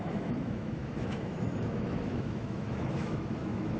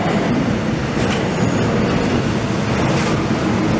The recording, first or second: second